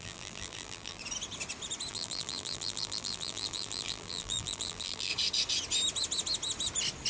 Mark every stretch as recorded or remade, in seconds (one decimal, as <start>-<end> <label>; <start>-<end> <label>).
0.0-1.0 remade; 1.0-1.9 recorded; 1.9-5.1 remade; 5.1-7.1 recorded